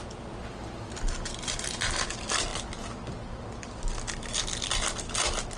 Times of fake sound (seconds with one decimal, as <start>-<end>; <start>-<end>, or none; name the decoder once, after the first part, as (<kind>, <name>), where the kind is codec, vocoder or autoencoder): none